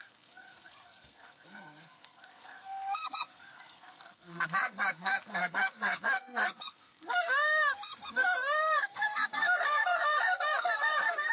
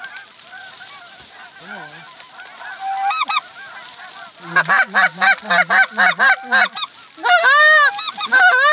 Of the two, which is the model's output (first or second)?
first